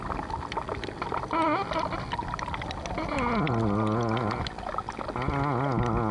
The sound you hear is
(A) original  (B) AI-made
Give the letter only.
A